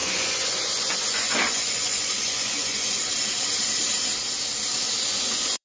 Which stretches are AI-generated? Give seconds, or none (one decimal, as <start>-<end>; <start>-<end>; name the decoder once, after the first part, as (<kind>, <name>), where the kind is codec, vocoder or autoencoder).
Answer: 0.0-3.0 (vocoder, Vocos); 5.0-5.6